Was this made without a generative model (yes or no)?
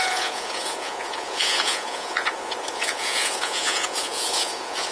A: no